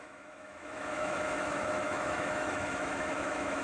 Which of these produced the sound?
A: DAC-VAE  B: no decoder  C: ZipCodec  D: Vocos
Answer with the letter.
A